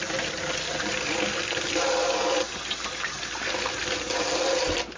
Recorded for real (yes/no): yes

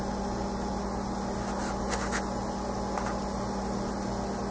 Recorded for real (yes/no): yes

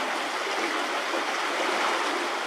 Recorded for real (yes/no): yes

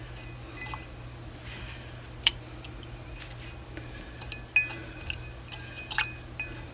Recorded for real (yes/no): yes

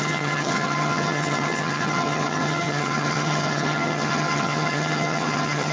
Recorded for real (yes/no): no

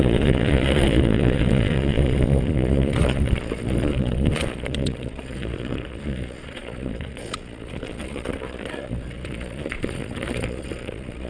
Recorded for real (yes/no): no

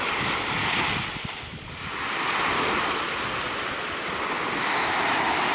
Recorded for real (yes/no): yes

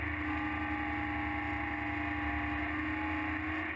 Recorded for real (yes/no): yes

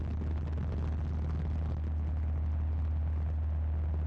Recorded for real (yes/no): yes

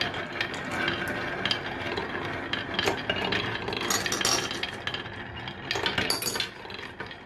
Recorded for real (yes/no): yes